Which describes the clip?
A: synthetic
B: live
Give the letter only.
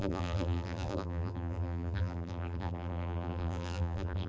A